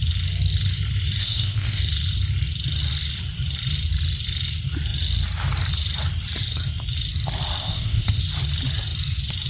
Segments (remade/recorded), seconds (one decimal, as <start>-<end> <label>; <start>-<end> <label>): 0.0-1.2 recorded; 1.2-1.8 remade; 1.8-7.6 recorded; 7.6-8.2 remade; 8.2-9.5 recorded